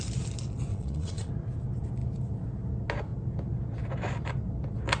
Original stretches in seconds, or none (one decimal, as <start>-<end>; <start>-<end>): 0.0-0.7; 1.3-5.0